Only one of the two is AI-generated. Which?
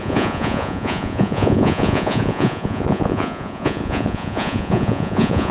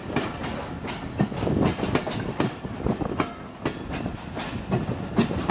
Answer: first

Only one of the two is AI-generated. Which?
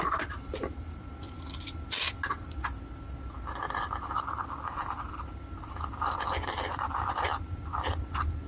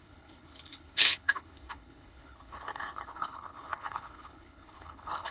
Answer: second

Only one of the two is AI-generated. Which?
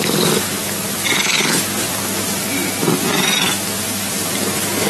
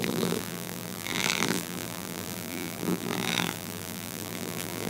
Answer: second